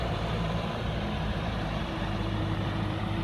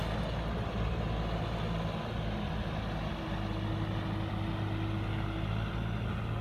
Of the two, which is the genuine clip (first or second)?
second